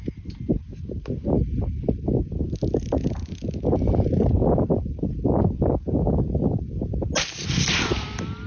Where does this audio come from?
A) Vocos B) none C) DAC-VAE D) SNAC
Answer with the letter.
B